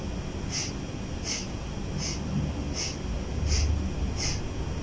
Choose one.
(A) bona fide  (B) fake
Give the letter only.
A